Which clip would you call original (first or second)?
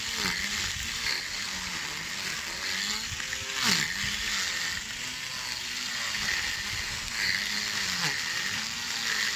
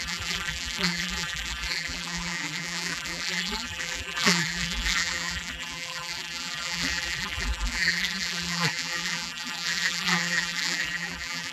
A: first